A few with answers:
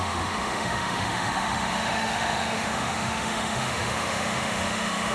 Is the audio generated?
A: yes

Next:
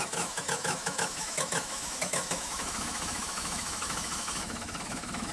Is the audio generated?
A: yes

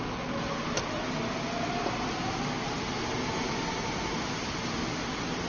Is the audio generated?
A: no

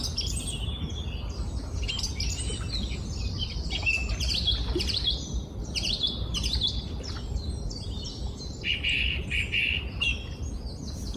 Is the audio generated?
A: no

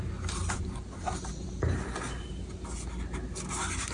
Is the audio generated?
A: no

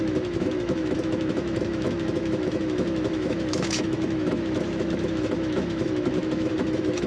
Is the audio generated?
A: yes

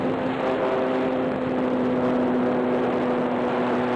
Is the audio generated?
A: no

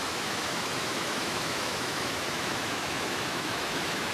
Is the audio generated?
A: yes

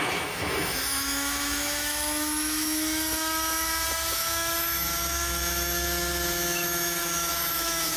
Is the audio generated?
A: yes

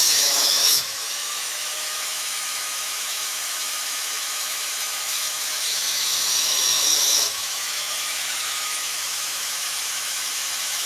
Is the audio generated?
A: yes